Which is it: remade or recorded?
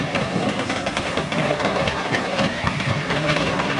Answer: remade